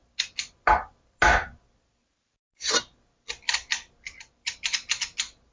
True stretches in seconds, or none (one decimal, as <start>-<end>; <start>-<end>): 0.0-5.5